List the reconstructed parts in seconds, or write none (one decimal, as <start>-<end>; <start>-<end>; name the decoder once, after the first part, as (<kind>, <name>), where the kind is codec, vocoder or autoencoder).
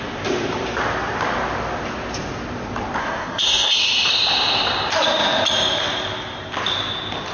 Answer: 3.0-3.8 (codec, SNAC)